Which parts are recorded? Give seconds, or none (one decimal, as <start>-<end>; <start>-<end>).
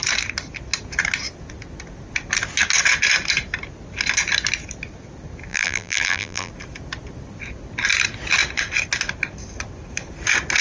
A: 0.0-5.5; 6.5-10.6